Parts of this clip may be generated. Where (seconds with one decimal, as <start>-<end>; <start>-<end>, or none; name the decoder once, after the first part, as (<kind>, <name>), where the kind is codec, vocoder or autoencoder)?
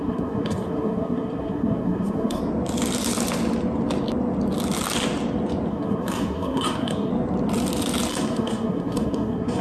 0.0-2.4 (codec, SNAC); 5.7-7.1; 8.1-9.6